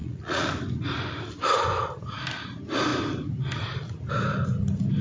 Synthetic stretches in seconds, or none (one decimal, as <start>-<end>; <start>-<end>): 0.0-0.5